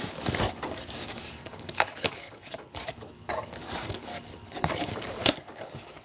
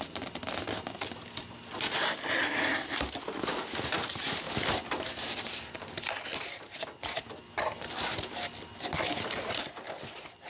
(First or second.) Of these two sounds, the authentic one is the second